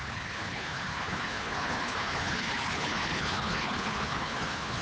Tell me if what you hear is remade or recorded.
remade